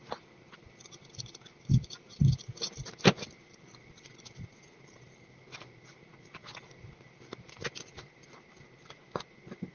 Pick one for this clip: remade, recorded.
remade